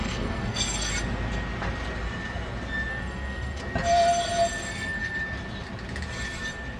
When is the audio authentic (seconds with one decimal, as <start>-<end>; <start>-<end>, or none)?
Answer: 0.9-2.9; 3.6-4.7; 5.2-6.8

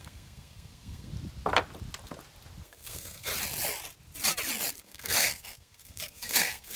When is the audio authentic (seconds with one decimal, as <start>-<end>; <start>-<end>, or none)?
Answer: 1.1-2.6; 3.3-4.8

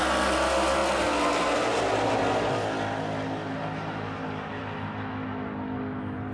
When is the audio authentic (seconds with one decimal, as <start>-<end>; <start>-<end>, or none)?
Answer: 0.0-6.3

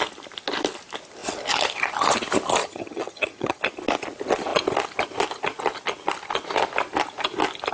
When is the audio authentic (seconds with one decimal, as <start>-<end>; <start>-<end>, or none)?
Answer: 0.0-2.6; 3.6-7.7

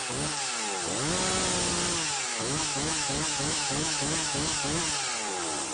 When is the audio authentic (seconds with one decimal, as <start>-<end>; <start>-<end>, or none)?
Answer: 0.0-2.3; 4.8-5.7